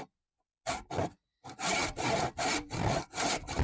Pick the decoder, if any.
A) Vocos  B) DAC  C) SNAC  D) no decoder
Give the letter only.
D